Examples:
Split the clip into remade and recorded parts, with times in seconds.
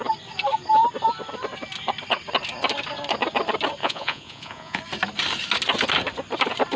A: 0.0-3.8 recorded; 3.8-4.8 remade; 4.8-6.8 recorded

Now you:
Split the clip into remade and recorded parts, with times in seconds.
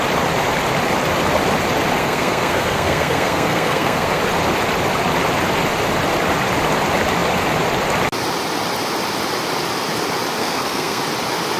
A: 0.0-2.0 recorded; 2.0-4.2 remade; 4.2-10.4 recorded; 10.4-11.0 remade; 11.0-11.6 recorded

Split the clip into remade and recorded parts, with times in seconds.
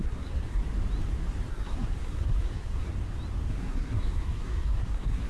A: 0.0-0.6 remade; 0.6-1.5 recorded; 1.5-2.9 remade; 2.9-3.5 recorded; 3.5-5.3 remade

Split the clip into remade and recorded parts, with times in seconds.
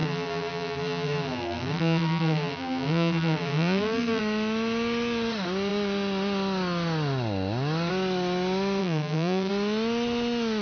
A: 0.0-4.2 remade; 4.2-8.8 recorded; 8.8-9.5 remade; 9.5-10.6 recorded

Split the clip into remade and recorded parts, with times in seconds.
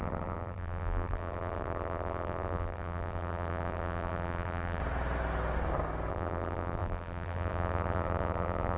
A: 0.0-4.8 remade; 4.8-6.1 recorded; 6.1-8.8 remade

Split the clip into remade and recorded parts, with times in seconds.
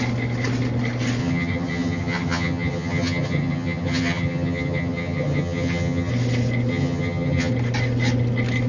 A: 0.0-1.2 recorded; 1.2-6.1 remade; 6.1-6.7 recorded; 6.7-7.5 remade; 7.5-8.7 recorded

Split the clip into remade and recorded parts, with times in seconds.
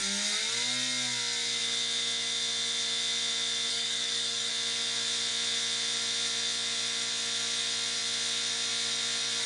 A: 0.0-3.7 recorded; 3.7-4.5 remade; 4.5-9.5 recorded